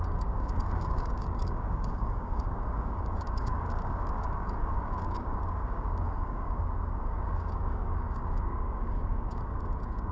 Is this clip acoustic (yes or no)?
no